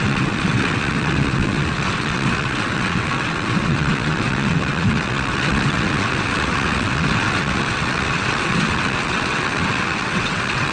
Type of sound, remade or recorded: remade